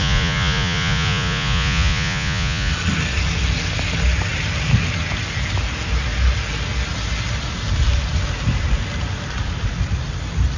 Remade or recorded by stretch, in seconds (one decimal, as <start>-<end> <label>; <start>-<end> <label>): 0.0-2.7 remade; 2.7-10.6 recorded

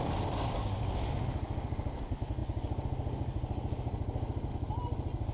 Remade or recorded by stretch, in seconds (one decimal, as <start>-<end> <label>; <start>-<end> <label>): 0.0-5.3 recorded

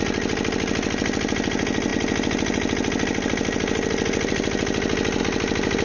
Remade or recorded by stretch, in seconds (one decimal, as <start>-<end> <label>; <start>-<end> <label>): 0.0-5.8 recorded

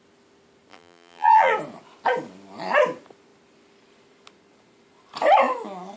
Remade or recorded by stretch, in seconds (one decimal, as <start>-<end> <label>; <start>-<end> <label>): 0.0-0.7 recorded; 0.7-1.5 remade; 1.5-6.0 recorded